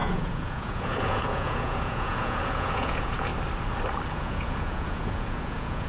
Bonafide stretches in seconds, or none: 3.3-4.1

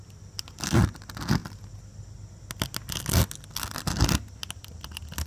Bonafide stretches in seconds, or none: 0.0-5.3